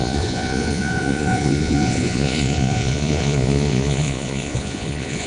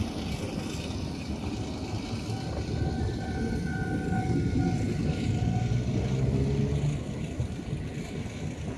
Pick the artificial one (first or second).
first